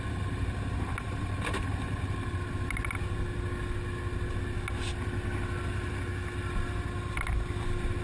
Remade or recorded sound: recorded